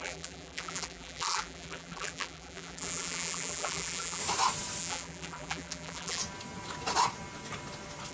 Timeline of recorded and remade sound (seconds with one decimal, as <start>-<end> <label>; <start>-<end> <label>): 0.0-4.2 remade; 4.2-4.8 recorded; 4.8-6.2 remade; 6.2-8.1 recorded